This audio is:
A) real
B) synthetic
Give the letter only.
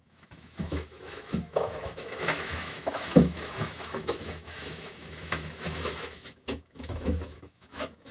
B